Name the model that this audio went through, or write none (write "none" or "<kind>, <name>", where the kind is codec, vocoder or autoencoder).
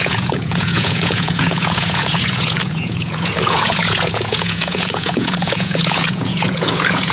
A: vocoder, Vocos